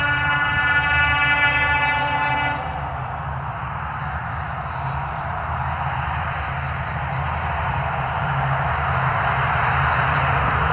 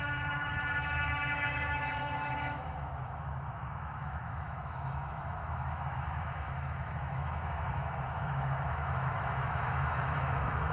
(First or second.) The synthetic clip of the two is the second